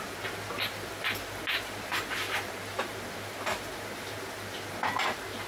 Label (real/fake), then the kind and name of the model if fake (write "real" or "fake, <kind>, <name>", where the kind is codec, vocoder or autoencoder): real